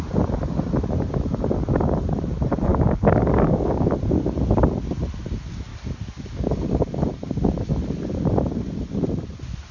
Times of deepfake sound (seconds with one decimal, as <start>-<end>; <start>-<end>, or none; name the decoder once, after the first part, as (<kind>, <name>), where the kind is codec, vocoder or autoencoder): 2.7-3.9 (codec, DAC); 5.7-7.0